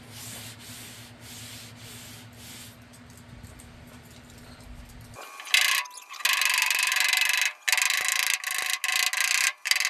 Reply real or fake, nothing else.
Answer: real